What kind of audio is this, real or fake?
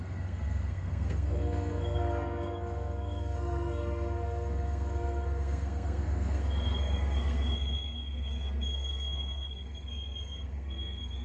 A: fake